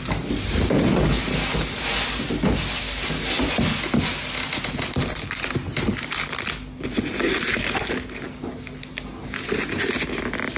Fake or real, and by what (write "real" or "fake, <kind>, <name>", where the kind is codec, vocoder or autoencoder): real